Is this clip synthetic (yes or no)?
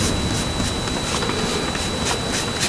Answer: no